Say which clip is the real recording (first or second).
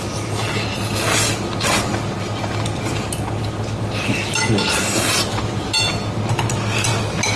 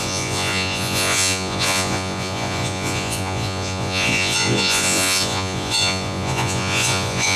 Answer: first